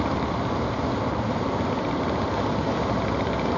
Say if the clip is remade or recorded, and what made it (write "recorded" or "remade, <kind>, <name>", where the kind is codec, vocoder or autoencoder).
recorded